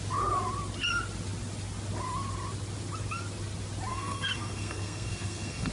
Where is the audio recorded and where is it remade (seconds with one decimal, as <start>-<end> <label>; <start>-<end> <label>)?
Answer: 0.0-3.9 recorded; 3.9-5.7 remade